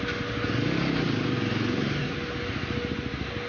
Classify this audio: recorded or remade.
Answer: recorded